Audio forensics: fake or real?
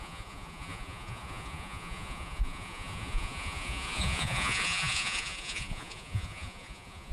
fake